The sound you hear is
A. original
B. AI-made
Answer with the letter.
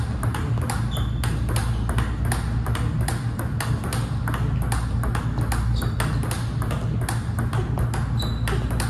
A